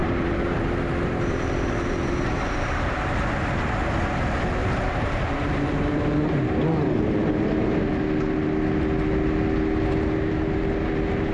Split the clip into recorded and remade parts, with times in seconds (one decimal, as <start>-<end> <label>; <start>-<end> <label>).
0.0-3.2 remade; 3.2-4.6 recorded; 4.6-7.9 remade; 7.9-11.3 recorded